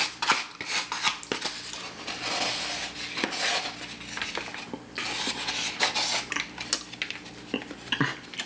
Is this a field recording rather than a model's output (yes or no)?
yes